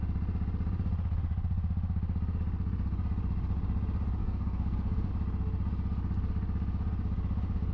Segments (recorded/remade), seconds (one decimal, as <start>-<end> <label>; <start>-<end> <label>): 0.0-4.2 recorded; 4.2-5.1 remade; 5.1-7.7 recorded